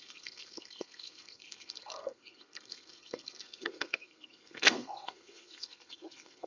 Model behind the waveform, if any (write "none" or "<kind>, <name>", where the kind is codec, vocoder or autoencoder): codec, SNAC